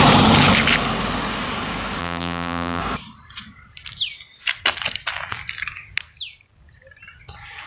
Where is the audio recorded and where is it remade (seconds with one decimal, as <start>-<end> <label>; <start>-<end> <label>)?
0.0-2.0 recorded; 2.0-2.8 remade; 2.8-7.7 recorded